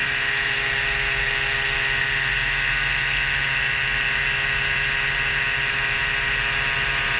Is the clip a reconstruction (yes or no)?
no